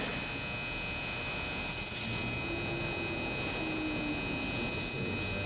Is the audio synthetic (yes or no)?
no